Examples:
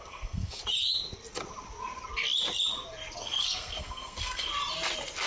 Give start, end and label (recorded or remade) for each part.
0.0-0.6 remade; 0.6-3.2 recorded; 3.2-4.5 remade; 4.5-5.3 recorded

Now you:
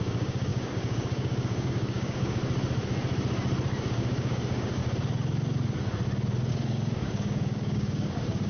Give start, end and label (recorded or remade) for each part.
0.0-2.4 remade; 2.4-3.9 recorded; 3.9-4.8 remade; 4.8-6.5 recorded; 6.5-8.5 remade